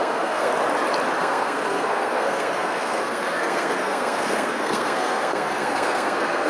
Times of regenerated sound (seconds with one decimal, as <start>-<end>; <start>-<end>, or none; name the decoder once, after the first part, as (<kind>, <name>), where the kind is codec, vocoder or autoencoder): 0.0-0.5 (codec, SNAC); 1.2-6.5